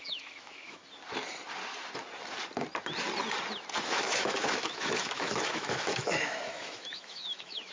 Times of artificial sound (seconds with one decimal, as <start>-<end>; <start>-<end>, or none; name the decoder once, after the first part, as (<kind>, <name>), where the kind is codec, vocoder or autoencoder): 0.0-0.8 (autoencoder, DAC-VAE); 3.8-7.7

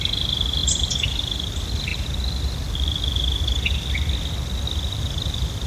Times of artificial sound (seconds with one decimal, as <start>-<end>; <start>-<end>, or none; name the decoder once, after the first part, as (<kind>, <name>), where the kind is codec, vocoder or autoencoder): none

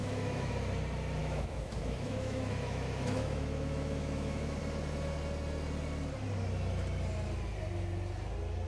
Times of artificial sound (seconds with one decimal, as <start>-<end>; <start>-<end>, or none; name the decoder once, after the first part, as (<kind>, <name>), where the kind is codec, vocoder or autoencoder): 0.0-0.5 (autoencoder, DAC-VAE); 1.2-4.6

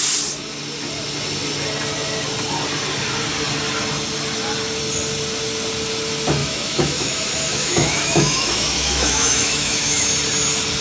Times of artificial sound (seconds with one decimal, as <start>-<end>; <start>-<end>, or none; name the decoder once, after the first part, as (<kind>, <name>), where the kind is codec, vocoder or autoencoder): 6.4-10.1 (autoencoder, DAC-VAE)

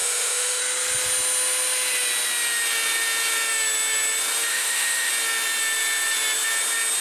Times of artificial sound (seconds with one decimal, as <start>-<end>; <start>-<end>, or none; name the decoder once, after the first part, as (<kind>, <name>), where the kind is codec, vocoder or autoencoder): 0.0-0.6 (autoencoder, DAC-VAE); 4.5-5.1